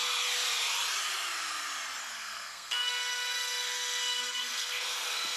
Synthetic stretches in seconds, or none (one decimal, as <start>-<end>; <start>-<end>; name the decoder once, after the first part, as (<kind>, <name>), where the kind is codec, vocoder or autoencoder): 2.0-5.4 (codec, SNAC)